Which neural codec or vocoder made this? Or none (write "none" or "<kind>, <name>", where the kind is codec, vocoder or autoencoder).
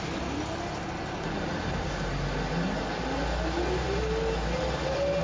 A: none